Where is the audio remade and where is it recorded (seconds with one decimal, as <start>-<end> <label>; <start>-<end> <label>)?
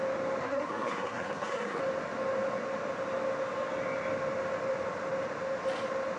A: 0.0-0.4 recorded; 0.4-1.8 remade; 1.8-6.2 recorded